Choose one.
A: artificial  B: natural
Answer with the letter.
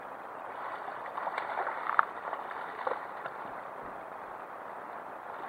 B